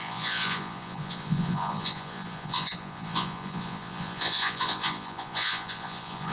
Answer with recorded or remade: remade